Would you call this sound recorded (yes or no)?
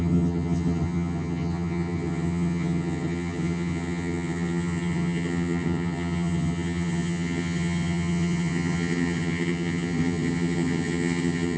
no